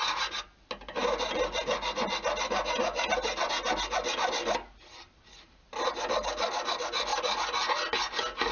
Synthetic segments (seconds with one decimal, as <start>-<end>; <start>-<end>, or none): none